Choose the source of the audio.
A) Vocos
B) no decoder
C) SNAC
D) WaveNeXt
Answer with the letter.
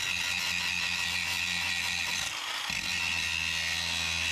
B